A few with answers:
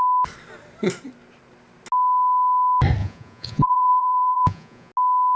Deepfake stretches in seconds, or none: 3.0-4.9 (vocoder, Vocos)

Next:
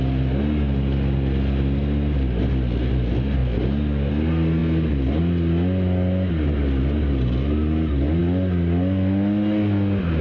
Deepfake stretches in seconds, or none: none

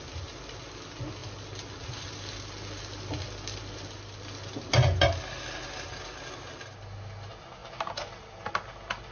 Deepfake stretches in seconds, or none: none

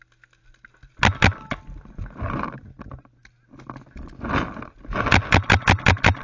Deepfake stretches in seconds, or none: none